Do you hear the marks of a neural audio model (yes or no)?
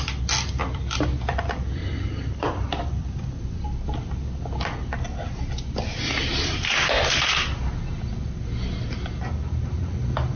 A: no